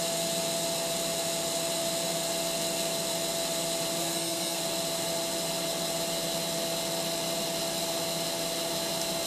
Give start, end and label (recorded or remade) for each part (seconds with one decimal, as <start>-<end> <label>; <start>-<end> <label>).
0.0-4.0 recorded; 4.0-4.6 remade; 4.6-9.3 recorded